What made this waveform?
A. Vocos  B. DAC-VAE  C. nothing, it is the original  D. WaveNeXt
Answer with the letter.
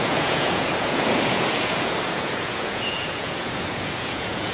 A